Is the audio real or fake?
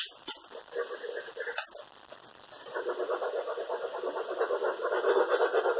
real